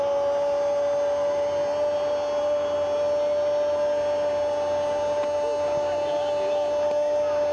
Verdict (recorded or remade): recorded